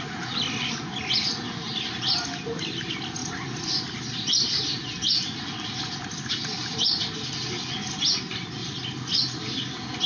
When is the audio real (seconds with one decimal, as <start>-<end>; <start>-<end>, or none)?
0.0-3.2; 7.9-10.1